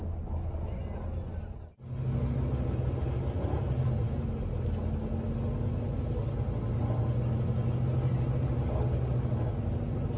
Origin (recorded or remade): recorded